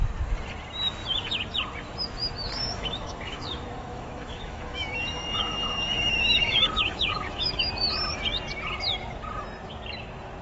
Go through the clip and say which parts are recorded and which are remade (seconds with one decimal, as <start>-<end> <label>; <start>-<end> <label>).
0.0-2.6 recorded; 2.6-7.7 remade; 7.7-10.4 recorded